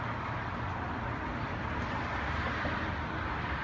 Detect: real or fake real